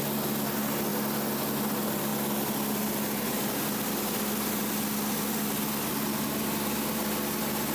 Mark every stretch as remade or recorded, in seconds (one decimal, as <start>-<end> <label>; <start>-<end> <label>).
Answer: 0.0-7.7 recorded